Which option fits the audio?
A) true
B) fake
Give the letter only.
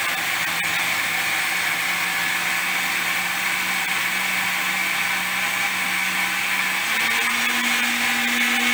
A